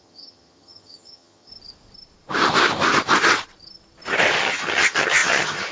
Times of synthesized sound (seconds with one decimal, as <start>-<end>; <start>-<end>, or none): 0.0-1.5; 4.4-5.7